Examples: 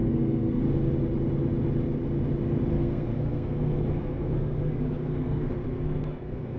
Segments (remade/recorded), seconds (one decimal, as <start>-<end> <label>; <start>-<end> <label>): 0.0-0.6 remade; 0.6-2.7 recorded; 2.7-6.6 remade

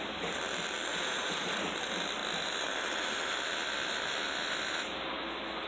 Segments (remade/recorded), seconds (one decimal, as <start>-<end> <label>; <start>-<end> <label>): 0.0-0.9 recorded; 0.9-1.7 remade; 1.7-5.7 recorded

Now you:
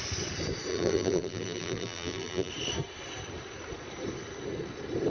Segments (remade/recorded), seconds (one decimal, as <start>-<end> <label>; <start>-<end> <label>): 0.0-0.7 recorded; 0.7-2.5 remade; 2.5-5.1 recorded

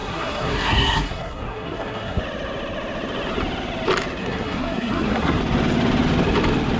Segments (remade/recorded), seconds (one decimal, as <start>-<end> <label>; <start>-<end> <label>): 0.0-2.2 remade; 2.2-4.2 recorded; 4.2-5.4 remade; 5.4-6.8 recorded